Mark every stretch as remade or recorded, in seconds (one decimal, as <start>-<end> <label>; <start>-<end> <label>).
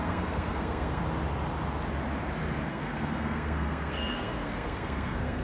0.0-1.0 remade; 1.0-2.7 recorded; 2.7-5.4 remade